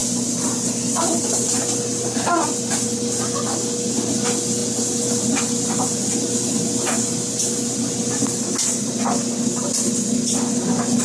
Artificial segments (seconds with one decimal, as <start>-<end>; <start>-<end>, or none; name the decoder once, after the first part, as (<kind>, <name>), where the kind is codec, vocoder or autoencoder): 0.0-1.4 (vocoder, BigVGAN v2)

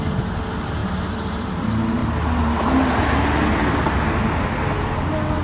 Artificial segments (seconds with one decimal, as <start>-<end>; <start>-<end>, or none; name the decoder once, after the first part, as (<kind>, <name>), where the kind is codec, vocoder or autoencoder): none

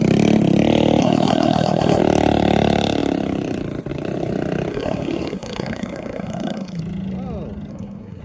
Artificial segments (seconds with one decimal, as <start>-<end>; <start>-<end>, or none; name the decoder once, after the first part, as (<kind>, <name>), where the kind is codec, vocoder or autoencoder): 1.0-2.0 (codec, SNAC); 4.7-6.8; 7.7-8.2

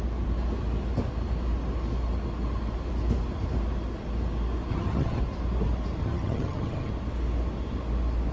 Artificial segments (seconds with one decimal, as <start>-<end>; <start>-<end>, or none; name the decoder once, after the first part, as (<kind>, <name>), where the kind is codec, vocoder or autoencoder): 4.7-5.2 (vocoder, HiFi-GAN); 6.0-6.9

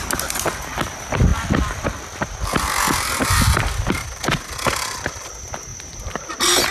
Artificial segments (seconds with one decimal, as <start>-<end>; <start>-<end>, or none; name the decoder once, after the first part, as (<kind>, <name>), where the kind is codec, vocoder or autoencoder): none